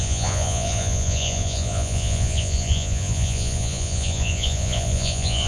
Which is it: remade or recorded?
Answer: remade